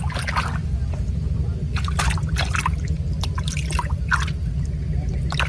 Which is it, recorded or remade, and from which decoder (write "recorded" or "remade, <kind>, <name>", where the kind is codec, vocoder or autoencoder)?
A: recorded